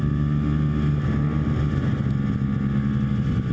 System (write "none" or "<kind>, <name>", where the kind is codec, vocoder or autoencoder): none